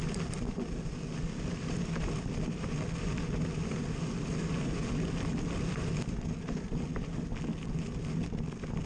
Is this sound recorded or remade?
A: recorded